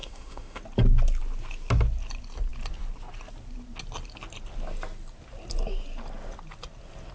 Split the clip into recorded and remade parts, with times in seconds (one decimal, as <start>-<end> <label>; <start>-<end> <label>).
0.0-0.6 remade; 0.6-7.1 recorded